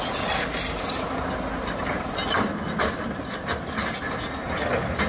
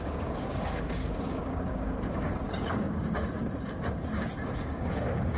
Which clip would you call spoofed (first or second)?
second